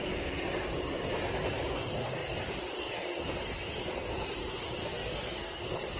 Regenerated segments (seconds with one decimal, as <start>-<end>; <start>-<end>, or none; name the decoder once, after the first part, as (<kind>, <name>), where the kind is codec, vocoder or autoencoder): 4.8-5.6 (codec, SNAC)